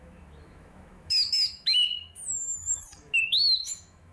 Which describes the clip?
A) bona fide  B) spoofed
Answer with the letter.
B